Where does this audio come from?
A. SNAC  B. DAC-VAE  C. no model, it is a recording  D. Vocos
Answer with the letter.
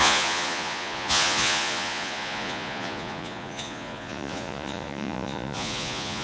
D